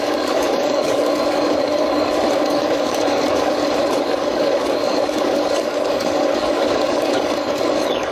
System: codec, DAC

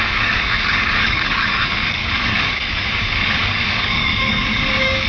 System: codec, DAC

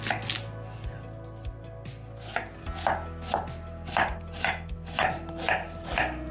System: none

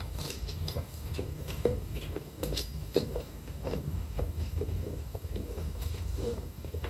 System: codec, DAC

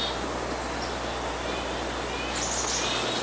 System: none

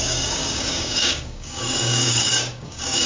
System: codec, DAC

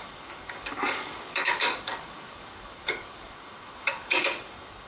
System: codec, DAC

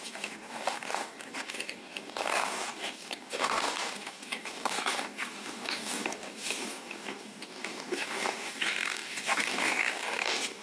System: codec, DAC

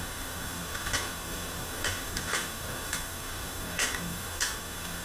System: codec, DAC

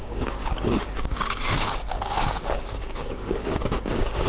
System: codec, DAC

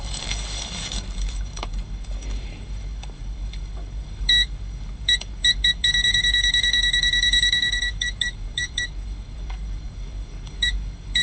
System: codec, DAC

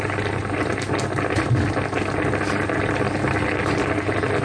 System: none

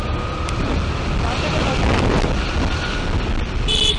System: none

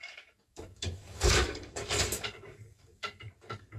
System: codec, DAC